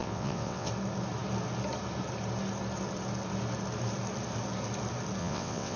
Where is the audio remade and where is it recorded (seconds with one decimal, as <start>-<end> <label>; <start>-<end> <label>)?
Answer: 0.0-0.7 remade; 0.7-5.2 recorded; 5.2-5.8 remade

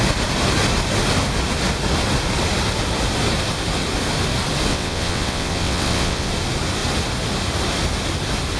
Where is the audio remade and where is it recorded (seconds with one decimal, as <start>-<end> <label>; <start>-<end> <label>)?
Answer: 0.0-4.7 recorded; 4.7-6.3 remade; 6.3-8.6 recorded

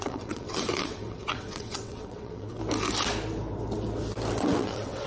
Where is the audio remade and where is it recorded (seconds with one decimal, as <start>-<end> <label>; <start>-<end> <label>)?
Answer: 0.0-2.6 remade; 2.6-4.4 recorded; 4.4-5.1 remade

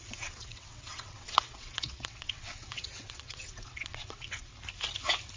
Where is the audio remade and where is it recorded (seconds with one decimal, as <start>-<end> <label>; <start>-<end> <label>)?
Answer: 0.0-4.5 remade; 4.5-5.4 recorded

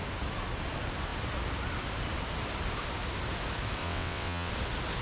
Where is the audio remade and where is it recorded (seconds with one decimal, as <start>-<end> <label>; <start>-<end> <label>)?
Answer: 0.0-3.8 recorded; 3.8-4.5 remade; 4.5-5.0 recorded

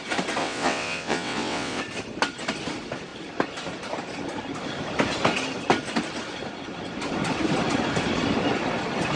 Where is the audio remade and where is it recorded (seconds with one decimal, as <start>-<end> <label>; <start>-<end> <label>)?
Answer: 0.0-0.4 recorded; 0.4-1.8 remade; 1.8-9.2 recorded

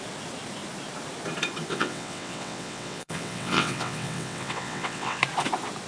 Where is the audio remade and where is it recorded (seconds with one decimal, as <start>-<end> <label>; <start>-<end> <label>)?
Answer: 0.0-1.7 recorded; 1.7-5.2 remade; 5.2-5.9 recorded